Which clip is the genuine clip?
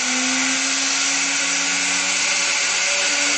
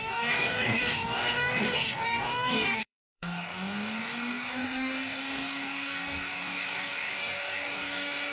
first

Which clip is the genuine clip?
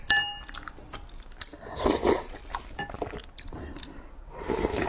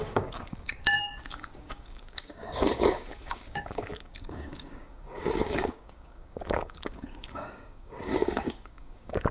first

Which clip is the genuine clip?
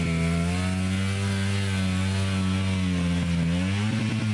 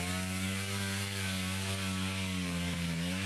first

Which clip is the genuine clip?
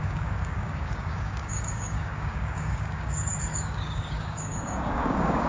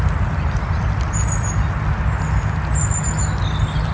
second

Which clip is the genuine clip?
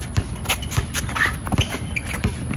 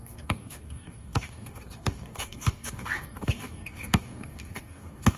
first